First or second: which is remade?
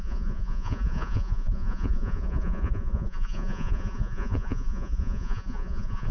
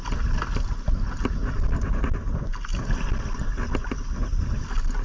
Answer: first